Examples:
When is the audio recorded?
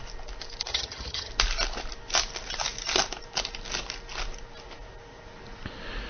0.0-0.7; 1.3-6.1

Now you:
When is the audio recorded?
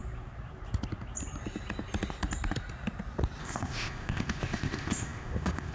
0.0-3.4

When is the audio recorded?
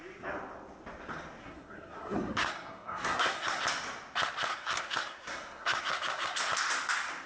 0.0-1.4; 3.6-4.5; 6.4-7.3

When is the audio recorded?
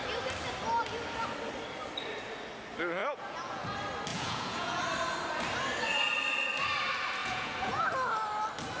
0.0-3.0; 3.6-4.1; 4.8-7.2; 7.9-8.8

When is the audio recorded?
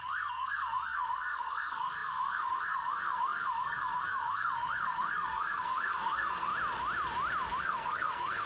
6.5-7.6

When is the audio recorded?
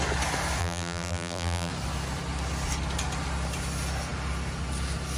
0.0-0.6; 1.7-5.2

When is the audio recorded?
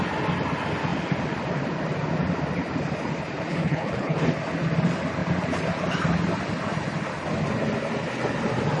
0.0-3.5; 4.3-8.8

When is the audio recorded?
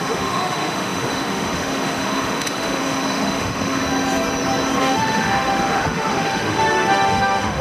3.8-4.8